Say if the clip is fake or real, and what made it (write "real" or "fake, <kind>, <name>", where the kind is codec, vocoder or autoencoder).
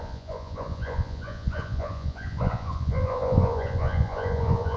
fake, vocoder, Vocos